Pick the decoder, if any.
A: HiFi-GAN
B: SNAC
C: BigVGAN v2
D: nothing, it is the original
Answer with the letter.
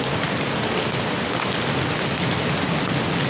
D